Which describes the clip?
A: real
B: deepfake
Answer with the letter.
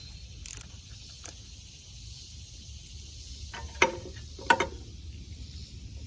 A